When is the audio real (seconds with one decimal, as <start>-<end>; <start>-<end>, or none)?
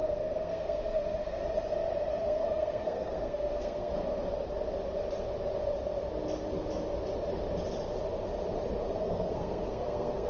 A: 1.4-2.2; 3.9-9.0